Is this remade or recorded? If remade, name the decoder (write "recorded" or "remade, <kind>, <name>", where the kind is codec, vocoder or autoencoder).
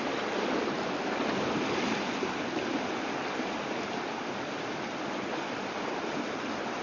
recorded